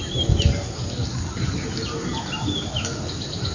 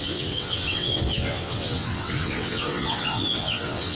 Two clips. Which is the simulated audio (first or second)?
second